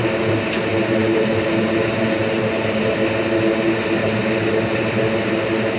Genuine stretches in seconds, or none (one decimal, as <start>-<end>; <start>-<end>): 0.0-5.8